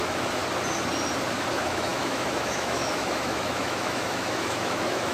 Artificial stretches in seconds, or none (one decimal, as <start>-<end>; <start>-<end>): 0.0-0.4; 1.5-5.1